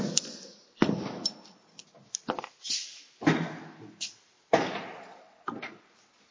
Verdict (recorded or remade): recorded